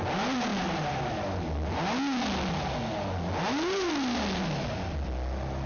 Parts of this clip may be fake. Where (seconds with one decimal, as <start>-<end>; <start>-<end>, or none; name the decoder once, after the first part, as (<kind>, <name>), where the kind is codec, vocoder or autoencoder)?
none